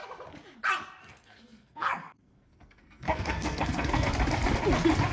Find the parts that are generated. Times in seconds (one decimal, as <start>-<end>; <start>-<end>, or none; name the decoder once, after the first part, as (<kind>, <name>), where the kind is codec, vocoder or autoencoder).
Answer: 1.0-4.1 (codec, SNAC)